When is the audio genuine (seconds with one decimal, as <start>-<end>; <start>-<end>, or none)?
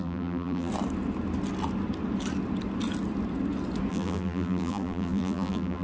0.7-3.9